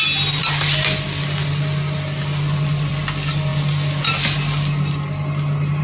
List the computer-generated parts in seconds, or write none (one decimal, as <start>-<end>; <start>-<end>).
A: none